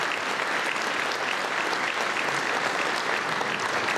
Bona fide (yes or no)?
yes